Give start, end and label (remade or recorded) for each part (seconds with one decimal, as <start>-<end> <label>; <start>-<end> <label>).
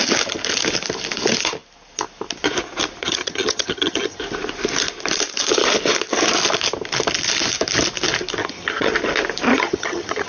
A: 0.0-3.0 recorded; 3.0-4.2 remade; 4.2-8.4 recorded; 8.4-8.9 remade; 8.9-9.5 recorded; 9.5-10.3 remade